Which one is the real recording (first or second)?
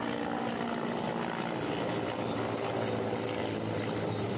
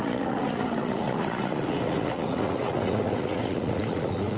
first